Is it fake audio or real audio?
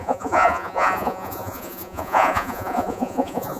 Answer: fake